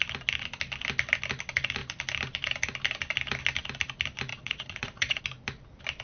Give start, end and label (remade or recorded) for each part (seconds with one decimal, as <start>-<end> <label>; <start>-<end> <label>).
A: 0.0-4.3 recorded; 4.3-5.2 remade; 5.2-6.0 recorded